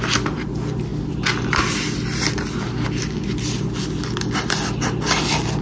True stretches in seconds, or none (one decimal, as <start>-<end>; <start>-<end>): 0.0-5.6